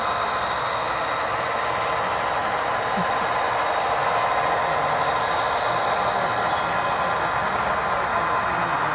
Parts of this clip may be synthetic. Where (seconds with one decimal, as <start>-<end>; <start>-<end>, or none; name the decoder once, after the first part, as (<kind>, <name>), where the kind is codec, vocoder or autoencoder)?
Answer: 2.4-3.5 (vocoder, BigVGAN v2)